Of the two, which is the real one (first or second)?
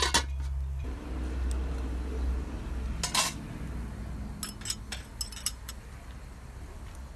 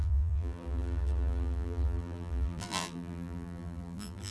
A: first